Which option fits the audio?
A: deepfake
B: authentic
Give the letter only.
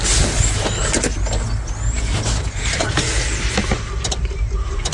B